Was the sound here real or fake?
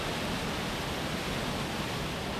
real